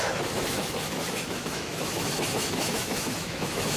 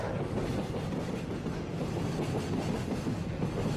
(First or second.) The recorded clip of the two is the second